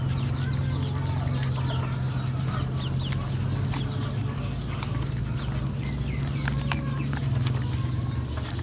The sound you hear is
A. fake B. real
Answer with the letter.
B